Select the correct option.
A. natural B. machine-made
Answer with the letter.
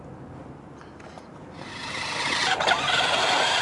A